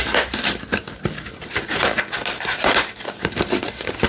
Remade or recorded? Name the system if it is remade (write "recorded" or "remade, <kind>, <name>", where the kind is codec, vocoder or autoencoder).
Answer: recorded